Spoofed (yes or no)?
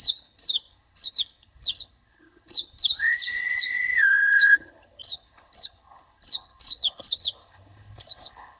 yes